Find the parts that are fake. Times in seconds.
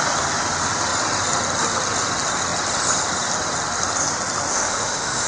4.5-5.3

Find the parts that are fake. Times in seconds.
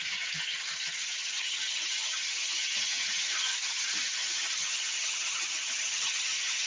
0.0-6.7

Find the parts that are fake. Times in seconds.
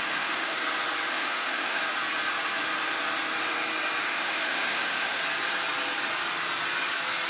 0.0-0.6; 1.1-1.8; 4.0-5.2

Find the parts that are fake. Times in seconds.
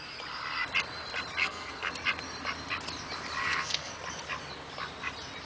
1.4-1.9; 3.4-3.9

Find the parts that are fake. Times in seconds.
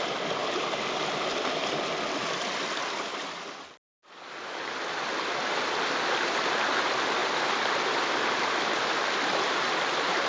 none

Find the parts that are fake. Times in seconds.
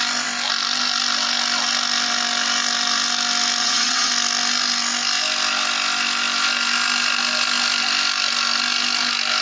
3.6-4.1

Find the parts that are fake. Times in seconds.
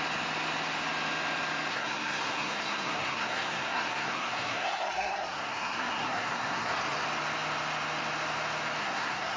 1.7-6.8; 8.8-9.4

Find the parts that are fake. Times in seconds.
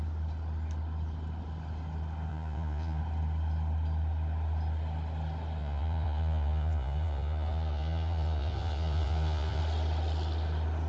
2.3-3.0; 5.6-9.6